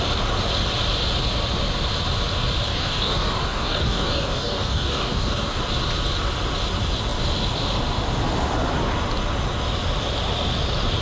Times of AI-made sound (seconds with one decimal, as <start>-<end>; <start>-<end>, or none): 2.7-5.6